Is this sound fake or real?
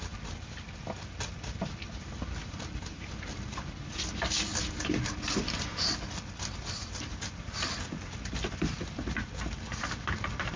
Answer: real